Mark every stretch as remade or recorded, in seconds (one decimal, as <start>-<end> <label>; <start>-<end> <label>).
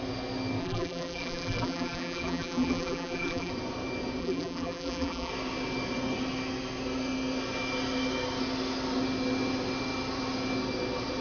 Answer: 0.0-0.6 recorded; 0.6-3.5 remade; 3.5-4.2 recorded; 4.2-5.3 remade; 5.3-11.2 recorded